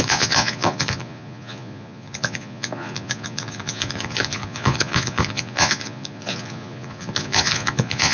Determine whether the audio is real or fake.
fake